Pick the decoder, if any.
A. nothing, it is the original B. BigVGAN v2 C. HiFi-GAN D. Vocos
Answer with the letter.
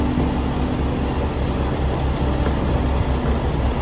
A